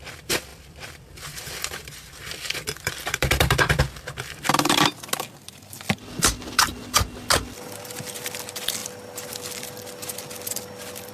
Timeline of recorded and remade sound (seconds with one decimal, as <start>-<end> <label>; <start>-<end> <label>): 0.0-0.5 recorded; 0.5-5.1 remade; 5.1-11.1 recorded